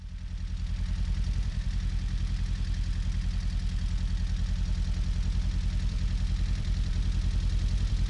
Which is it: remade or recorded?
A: remade